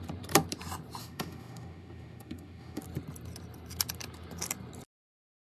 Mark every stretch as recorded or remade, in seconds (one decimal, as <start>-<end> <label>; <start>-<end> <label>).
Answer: 0.0-1.0 recorded; 1.0-2.8 remade; 2.8-5.5 recorded